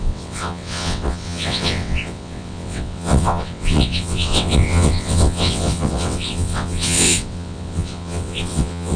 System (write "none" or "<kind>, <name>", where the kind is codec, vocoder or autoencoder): vocoder, WaveNeXt